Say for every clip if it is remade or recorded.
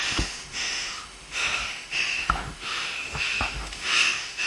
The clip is remade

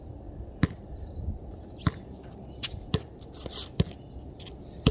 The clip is recorded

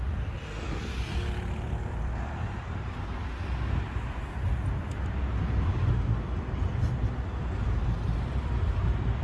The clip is recorded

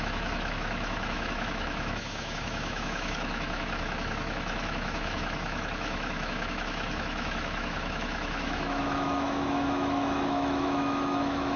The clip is remade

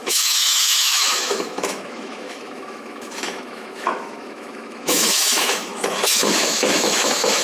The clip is remade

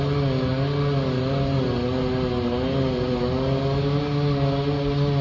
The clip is recorded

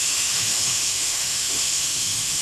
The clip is remade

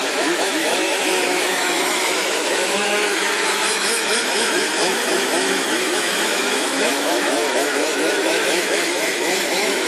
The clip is remade